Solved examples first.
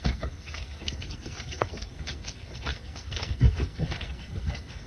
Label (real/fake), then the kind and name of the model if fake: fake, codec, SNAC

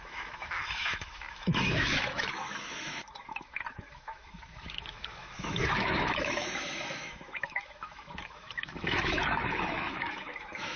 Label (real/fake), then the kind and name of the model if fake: fake, autoencoder, DAC-VAE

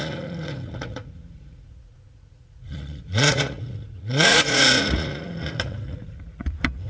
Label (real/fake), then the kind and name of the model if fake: fake, vocoder, Vocos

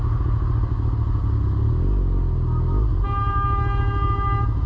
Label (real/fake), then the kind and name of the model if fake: real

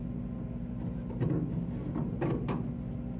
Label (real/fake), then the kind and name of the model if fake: real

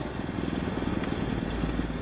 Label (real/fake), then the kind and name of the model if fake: real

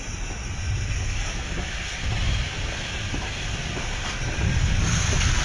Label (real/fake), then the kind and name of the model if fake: real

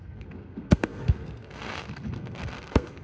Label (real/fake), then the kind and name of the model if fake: fake, codec, SNAC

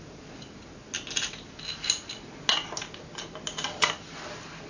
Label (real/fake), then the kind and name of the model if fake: real